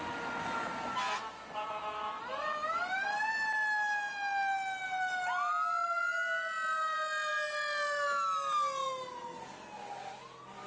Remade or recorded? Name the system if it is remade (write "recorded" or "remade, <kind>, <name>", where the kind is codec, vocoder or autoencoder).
recorded